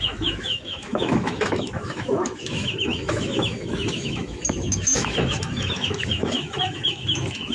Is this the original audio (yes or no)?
no